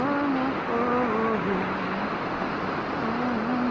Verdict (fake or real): real